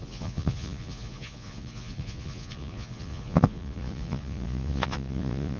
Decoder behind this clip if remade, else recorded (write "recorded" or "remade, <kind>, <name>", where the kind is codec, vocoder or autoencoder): remade, vocoder, Vocos